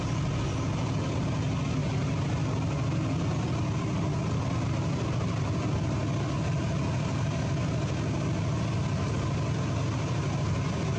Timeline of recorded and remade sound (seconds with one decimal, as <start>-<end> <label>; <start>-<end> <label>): 0.0-11.0 recorded